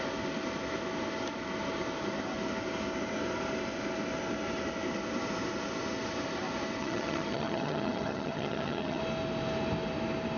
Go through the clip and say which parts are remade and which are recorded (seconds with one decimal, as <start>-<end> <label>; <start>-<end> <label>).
0.0-6.8 recorded; 6.8-9.0 remade; 9.0-10.4 recorded